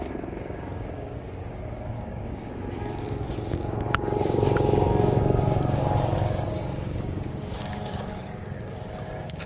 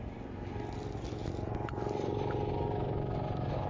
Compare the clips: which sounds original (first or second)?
second